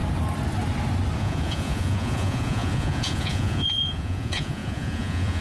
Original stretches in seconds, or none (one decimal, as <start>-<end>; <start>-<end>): 0.0-1.2